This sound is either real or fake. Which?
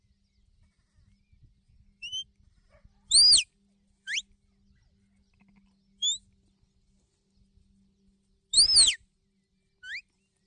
real